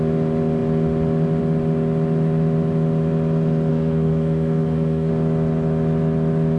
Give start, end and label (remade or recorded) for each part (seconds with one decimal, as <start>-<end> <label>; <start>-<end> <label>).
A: 0.0-3.7 recorded; 3.7-5.1 remade; 5.1-6.6 recorded